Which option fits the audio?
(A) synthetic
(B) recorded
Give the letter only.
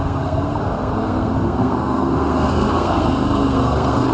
A